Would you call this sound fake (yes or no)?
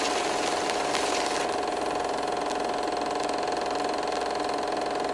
no